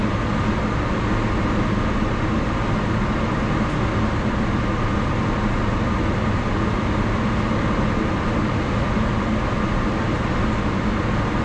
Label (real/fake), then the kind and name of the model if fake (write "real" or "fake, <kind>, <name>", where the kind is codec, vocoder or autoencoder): real